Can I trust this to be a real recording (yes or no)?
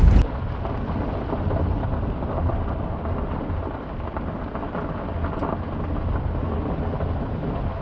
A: yes